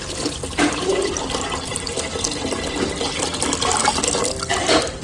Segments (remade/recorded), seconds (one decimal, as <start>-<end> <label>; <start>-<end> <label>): 0.0-5.0 recorded